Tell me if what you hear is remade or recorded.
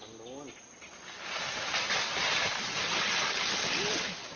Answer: recorded